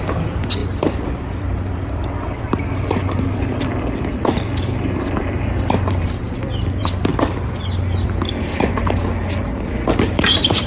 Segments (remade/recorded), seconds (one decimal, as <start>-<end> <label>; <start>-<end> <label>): 0.0-7.1 remade; 7.1-9.6 recorded; 9.6-10.7 remade